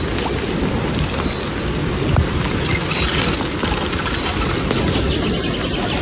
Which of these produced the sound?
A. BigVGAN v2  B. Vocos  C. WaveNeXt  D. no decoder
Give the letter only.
D